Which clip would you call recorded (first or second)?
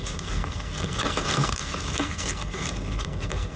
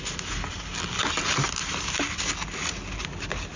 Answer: second